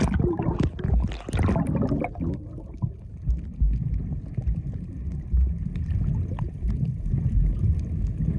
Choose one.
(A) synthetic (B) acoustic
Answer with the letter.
B